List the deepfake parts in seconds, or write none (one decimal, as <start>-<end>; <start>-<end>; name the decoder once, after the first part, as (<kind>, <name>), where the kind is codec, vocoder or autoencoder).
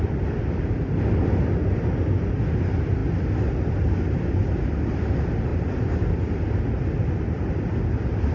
none